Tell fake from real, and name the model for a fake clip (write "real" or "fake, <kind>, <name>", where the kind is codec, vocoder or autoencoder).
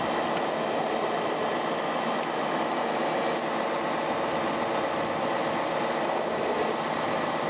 real